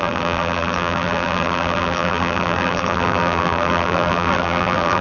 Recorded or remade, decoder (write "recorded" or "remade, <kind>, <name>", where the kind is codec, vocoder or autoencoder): remade, vocoder, BigVGAN v2